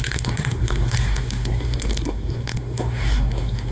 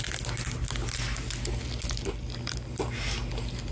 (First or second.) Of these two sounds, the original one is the second